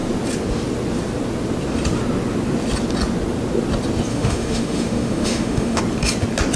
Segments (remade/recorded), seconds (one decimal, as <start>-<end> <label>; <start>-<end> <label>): 0.0-4.1 recorded; 4.1-5.8 remade; 5.8-6.6 recorded